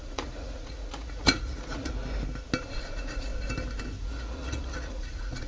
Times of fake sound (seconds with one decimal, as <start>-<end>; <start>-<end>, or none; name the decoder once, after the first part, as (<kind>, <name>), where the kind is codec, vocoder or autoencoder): 0.0-1.9 (vocoder, Vocos); 2.6-3.3; 4.0-5.5